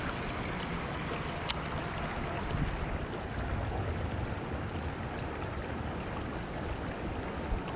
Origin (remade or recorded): recorded